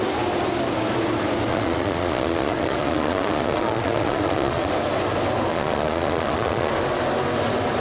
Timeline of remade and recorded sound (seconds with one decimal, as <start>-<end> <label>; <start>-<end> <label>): 0.0-1.5 recorded; 1.5-4.7 remade; 4.7-5.5 recorded; 5.5-6.7 remade; 6.7-7.8 recorded